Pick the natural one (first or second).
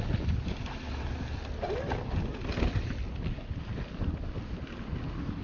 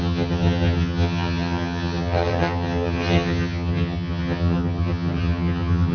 first